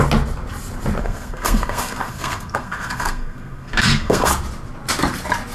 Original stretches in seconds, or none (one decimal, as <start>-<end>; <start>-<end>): 0.0-1.0; 4.3-5.5